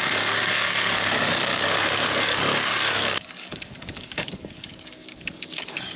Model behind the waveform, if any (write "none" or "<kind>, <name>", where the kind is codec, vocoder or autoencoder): codec, DAC